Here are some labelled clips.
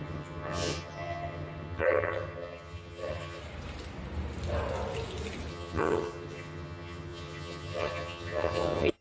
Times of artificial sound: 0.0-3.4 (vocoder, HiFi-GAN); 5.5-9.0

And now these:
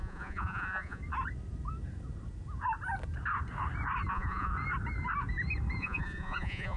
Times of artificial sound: 0.0-1.0 (vocoder, Vocos); 4.1-4.5; 5.8-6.8

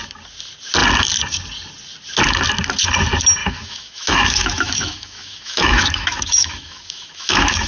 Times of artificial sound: 3.4-7.7 (autoencoder, DAC-VAE)